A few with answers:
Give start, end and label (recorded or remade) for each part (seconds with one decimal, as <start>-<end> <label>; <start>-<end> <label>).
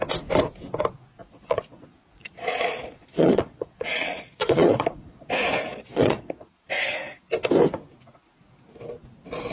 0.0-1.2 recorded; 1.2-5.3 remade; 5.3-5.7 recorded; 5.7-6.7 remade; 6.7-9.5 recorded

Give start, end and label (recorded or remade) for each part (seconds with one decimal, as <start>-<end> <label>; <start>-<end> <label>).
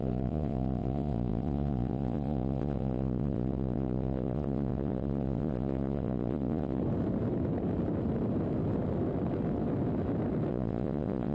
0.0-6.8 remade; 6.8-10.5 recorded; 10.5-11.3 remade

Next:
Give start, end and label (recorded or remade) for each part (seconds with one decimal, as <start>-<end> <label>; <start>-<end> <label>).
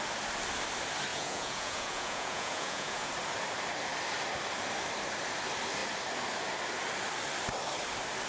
0.0-1.1 recorded; 1.1-3.1 remade; 3.1-8.3 recorded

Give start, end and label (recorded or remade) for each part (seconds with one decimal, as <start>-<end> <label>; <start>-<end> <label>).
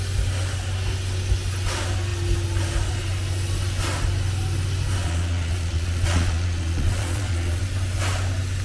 0.0-5.0 recorded; 5.0-7.6 remade; 7.6-8.6 recorded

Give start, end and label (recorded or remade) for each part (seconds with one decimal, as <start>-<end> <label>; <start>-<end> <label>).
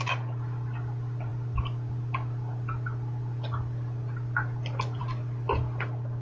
0.0-6.2 recorded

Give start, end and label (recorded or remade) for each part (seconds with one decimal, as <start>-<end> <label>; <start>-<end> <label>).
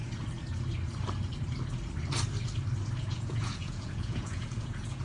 0.0-3.0 recorded; 3.0-5.0 remade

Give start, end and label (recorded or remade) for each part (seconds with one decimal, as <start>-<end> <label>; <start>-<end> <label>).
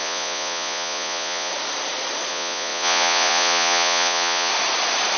0.0-1.5 remade; 1.5-2.3 recorded; 2.3-4.5 remade; 4.5-5.2 recorded